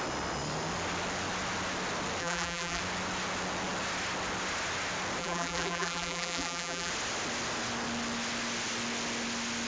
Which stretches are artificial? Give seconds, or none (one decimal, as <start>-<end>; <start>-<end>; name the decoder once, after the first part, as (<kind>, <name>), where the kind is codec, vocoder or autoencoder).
2.2-2.8 (vocoder, BigVGAN v2); 5.2-6.9